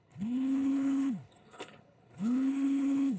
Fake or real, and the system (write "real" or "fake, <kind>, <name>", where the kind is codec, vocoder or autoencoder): fake, codec, HILCodec